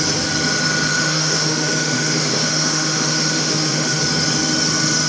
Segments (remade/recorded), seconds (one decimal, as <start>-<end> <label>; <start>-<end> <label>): 0.0-0.9 recorded; 0.9-4.0 remade; 4.0-5.1 recorded